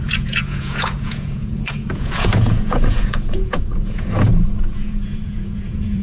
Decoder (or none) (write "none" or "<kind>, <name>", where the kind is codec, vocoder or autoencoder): vocoder, Vocos